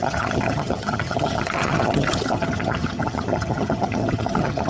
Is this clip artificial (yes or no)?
yes